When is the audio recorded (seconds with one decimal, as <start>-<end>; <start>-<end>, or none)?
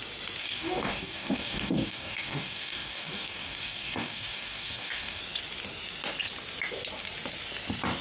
0.0-0.4; 5.2-8.0